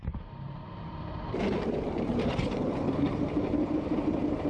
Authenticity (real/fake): fake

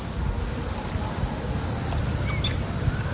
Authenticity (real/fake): real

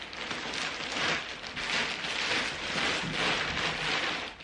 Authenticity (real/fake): real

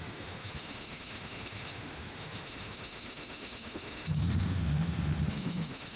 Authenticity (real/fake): fake